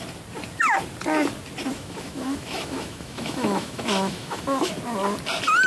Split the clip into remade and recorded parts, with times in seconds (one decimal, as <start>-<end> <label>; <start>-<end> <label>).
0.0-1.7 recorded; 1.7-4.7 remade; 4.7-5.7 recorded